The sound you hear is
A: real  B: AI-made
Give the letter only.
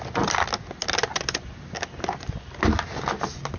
A